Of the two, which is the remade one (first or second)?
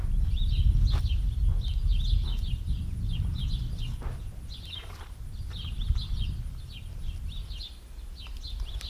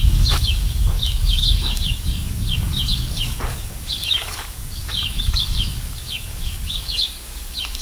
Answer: second